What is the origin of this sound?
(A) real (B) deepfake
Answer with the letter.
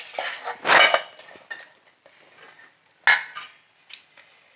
A